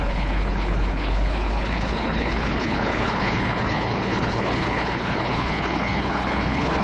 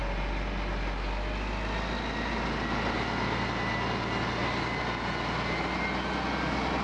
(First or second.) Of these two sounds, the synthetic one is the first